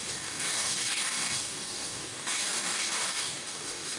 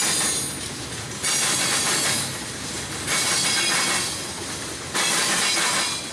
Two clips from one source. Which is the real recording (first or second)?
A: second